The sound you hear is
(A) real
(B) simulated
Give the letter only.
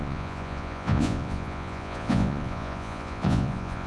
B